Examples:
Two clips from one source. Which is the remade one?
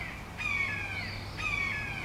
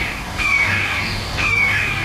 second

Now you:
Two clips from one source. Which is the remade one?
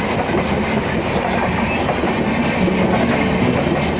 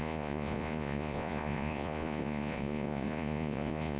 second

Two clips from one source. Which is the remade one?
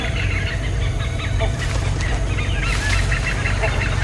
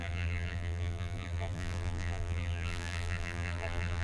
second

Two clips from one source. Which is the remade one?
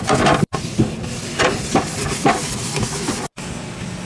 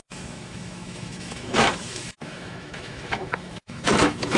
second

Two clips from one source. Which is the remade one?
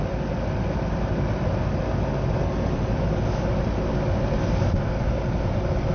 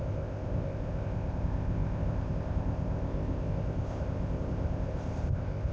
second